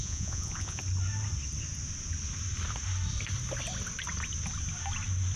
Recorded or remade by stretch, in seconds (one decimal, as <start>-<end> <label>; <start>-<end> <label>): 0.0-0.8 remade; 0.8-5.4 recorded